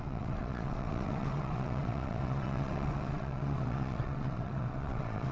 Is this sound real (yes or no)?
no